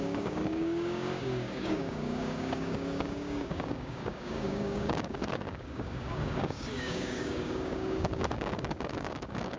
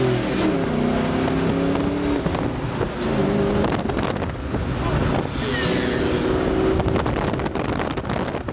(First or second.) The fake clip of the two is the first